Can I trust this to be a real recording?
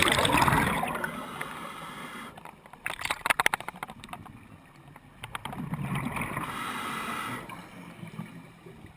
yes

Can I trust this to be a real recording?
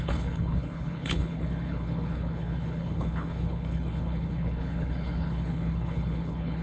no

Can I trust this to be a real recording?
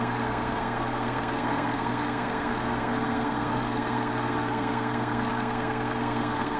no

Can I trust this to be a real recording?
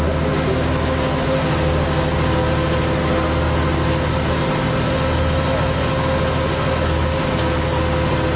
yes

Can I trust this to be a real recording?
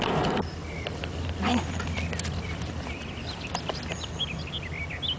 yes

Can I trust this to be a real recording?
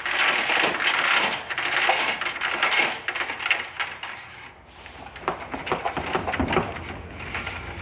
yes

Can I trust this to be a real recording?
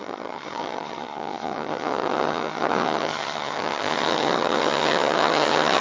no